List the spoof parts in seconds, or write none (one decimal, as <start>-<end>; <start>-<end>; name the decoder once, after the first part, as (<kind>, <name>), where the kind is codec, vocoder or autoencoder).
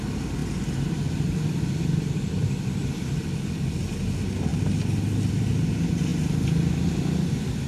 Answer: none